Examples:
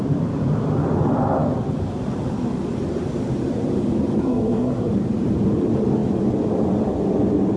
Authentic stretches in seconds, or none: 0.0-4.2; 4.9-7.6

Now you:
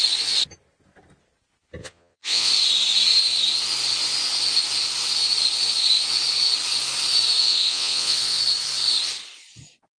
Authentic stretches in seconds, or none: 0.0-1.8; 2.5-7.4; 8.4-10.0

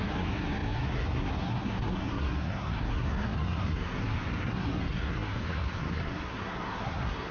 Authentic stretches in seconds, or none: none

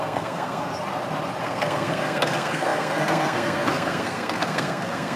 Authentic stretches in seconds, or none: 0.7-1.4

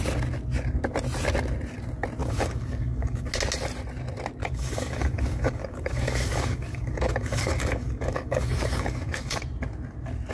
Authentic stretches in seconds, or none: 0.0-2.2; 3.3-4.4; 9.4-10.3

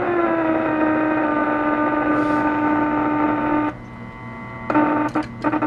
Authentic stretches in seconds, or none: 0.0-5.7

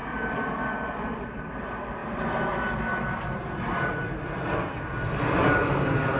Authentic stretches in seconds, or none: 0.0-6.2

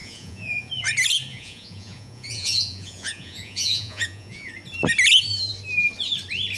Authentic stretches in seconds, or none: 0.7-1.3; 4.5-6.6